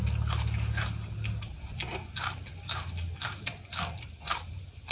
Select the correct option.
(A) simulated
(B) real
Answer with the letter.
B